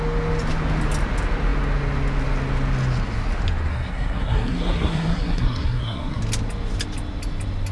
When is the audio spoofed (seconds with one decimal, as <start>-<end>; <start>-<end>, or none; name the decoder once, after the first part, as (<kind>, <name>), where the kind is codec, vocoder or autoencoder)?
3.7-6.2 (codec, SNAC)